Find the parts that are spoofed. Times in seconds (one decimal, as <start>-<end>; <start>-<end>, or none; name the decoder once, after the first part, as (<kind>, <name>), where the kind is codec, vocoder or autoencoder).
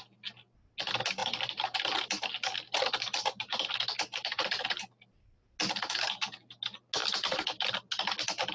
1.2-4.8 (vocoder, BigVGAN v2); 7.0-7.7